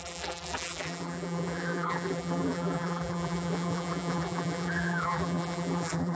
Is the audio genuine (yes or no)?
no